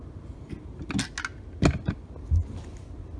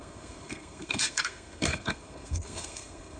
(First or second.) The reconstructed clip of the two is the second